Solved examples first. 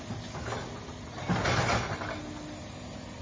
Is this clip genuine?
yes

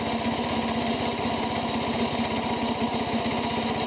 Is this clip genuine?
yes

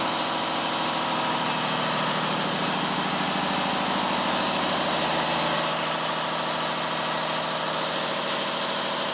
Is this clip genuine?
yes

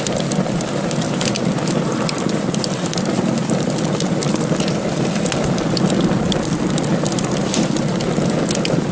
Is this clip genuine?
yes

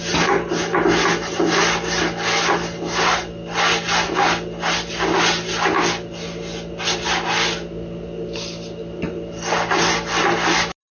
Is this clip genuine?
yes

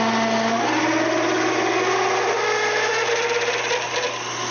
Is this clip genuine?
yes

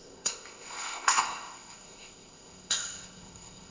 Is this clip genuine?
no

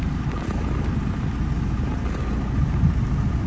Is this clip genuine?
yes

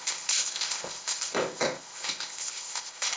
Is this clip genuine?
no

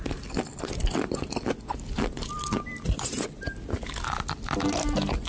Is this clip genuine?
yes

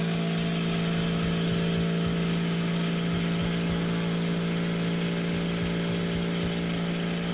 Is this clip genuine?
yes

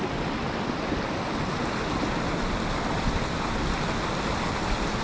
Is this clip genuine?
yes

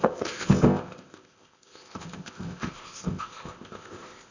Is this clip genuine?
no